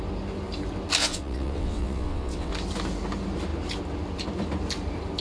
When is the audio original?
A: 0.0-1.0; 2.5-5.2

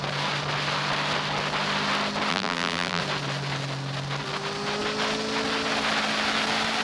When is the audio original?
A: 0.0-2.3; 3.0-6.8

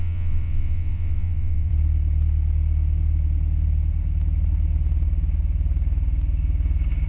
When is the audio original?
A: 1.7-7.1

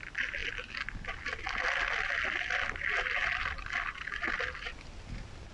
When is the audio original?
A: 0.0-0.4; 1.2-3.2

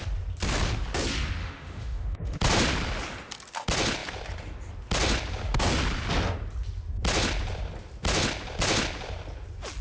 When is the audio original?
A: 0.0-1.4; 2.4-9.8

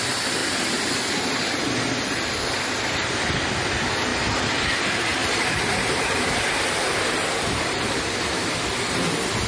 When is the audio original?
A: 0.0-0.4; 0.9-5.2; 6.8-9.5